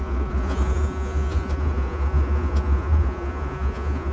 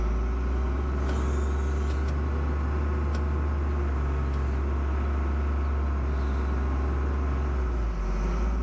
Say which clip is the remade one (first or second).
first